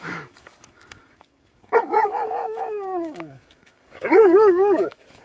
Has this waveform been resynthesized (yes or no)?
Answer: yes